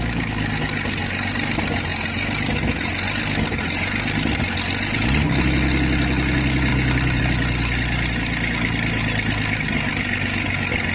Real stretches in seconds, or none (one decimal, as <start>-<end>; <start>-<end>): 0.0-10.9